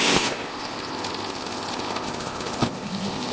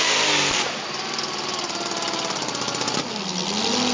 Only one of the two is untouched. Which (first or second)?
second